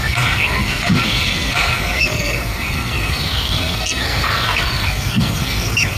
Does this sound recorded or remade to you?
remade